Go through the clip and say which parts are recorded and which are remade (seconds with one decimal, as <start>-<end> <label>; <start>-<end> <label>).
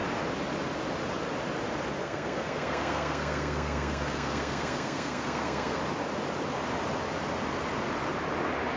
0.0-2.0 recorded; 2.0-5.8 remade; 5.8-8.8 recorded